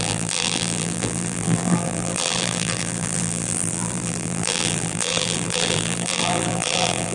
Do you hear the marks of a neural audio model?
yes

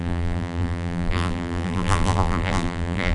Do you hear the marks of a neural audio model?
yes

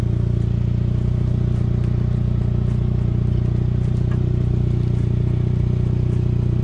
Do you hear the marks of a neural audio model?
no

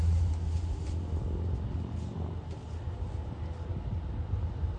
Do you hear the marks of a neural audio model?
no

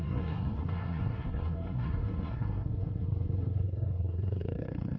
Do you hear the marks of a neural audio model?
yes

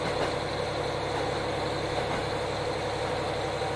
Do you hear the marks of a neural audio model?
no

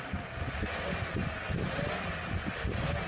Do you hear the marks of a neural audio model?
no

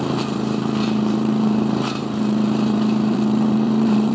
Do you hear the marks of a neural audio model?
yes